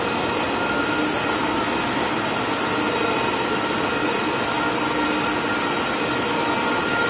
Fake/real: real